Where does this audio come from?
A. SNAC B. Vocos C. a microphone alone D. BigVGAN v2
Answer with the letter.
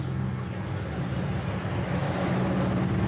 C